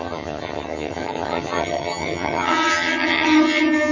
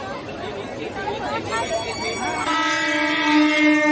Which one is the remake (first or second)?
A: first